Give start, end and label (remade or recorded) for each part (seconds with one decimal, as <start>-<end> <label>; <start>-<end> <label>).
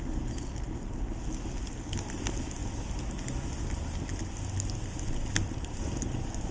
0.0-6.5 recorded